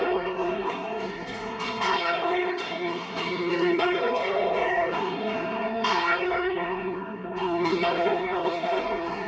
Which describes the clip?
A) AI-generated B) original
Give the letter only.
A